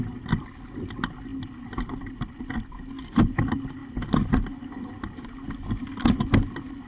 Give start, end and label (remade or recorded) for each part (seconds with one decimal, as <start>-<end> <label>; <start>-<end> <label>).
0.0-6.9 recorded